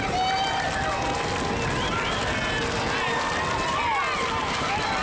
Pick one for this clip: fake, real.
real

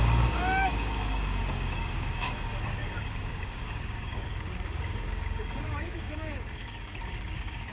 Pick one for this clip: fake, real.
fake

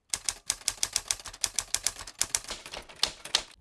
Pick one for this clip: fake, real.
real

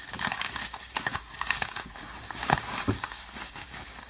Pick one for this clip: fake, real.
fake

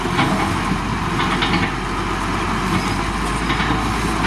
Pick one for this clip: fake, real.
real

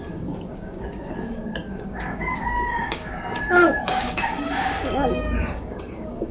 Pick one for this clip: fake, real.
fake